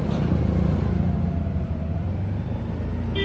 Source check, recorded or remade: recorded